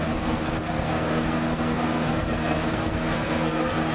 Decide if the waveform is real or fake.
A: fake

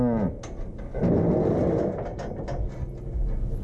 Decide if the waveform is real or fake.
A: real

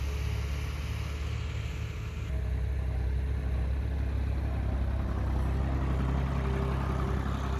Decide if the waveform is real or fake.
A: real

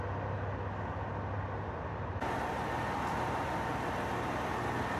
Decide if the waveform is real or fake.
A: real